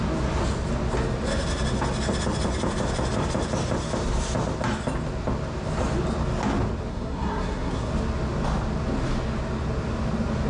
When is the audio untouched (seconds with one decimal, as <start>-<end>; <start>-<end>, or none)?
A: 0.0-6.9; 7.9-10.5